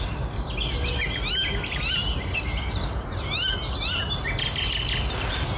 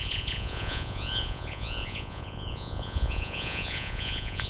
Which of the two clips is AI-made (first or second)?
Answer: second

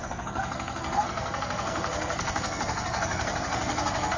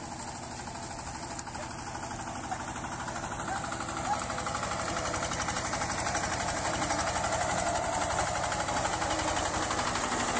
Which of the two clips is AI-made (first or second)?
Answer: first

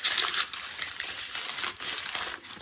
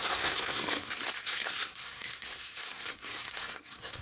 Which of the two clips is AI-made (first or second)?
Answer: second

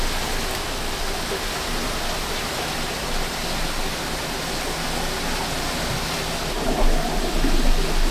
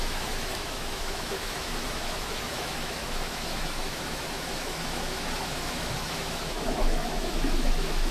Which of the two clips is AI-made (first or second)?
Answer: second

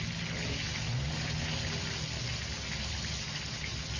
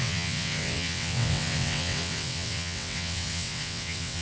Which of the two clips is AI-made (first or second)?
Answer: second